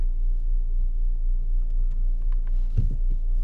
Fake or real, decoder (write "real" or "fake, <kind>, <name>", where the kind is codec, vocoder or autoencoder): real